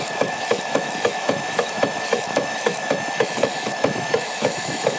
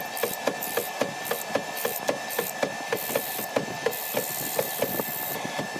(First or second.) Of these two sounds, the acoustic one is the second